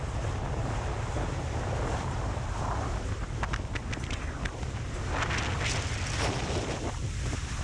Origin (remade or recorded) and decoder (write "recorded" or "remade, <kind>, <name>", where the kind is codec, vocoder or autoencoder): recorded